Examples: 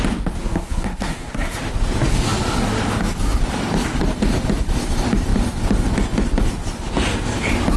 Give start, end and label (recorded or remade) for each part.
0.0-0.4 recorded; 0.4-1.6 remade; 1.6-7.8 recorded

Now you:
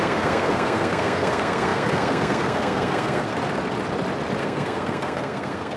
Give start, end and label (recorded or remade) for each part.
0.0-3.3 remade; 3.3-4.4 recorded; 4.4-5.8 remade

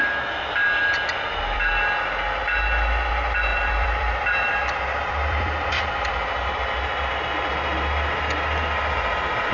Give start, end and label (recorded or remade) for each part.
0.0-0.6 recorded; 0.6-1.7 remade; 1.7-3.5 recorded; 3.5-6.7 remade; 6.7-9.5 recorded

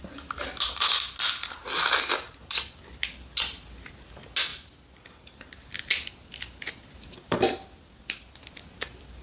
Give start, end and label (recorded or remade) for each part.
0.0-9.2 recorded

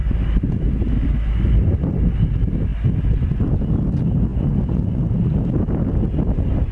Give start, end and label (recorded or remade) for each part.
0.0-4.3 recorded; 4.3-5.0 remade; 5.0-6.7 recorded

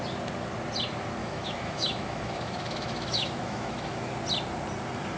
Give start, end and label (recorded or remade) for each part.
0.0-1.2 recorded; 1.2-4.1 remade; 4.1-5.2 recorded